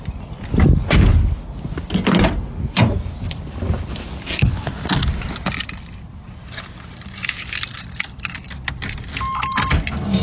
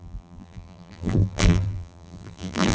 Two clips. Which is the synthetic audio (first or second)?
second